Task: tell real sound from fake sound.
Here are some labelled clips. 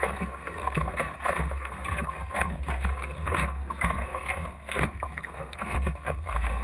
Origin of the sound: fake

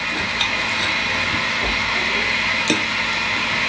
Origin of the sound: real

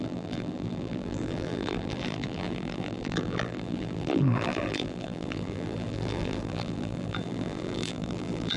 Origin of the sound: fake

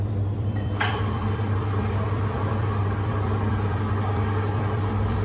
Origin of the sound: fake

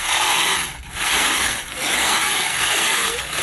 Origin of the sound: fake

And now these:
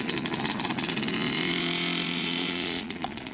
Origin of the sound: fake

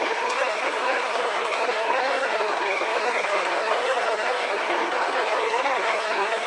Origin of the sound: fake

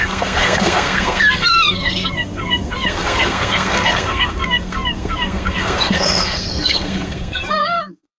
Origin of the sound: fake